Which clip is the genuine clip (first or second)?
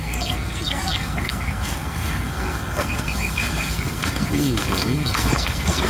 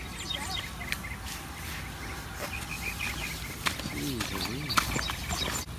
second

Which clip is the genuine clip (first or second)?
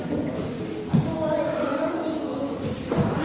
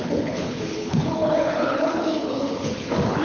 first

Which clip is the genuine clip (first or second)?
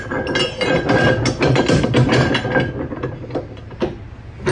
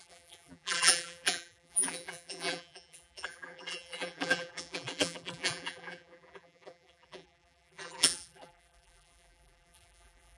first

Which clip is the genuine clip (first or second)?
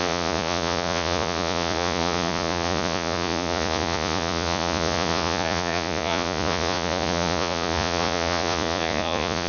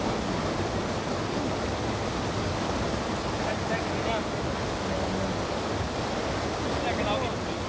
second